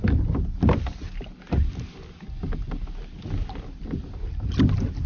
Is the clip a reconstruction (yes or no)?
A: no